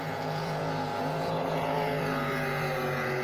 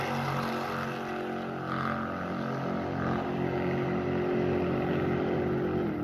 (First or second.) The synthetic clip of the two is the first